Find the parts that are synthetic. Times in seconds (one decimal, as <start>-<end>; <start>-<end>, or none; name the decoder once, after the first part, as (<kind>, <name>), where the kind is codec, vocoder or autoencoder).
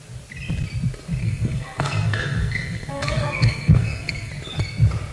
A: 1.2-4.3 (codec, SNAC)